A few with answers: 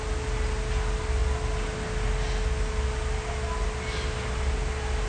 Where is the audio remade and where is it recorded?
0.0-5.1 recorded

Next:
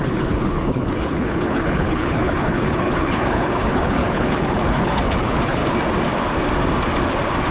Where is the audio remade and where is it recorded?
0.0-5.6 remade; 5.6-7.5 recorded